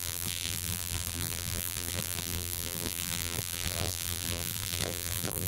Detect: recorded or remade remade